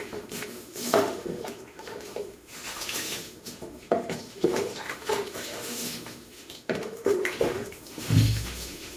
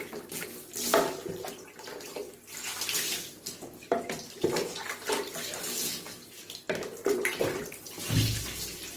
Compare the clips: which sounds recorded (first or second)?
second